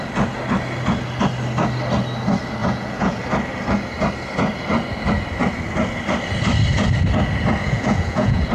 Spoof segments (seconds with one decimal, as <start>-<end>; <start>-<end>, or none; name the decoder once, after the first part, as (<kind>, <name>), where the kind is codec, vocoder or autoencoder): 2.6-3.2 (vocoder, Vocos); 7.6-8.5